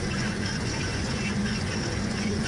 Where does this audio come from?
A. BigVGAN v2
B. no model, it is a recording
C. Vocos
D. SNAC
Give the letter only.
C